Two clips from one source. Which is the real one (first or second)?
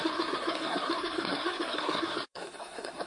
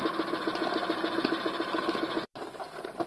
second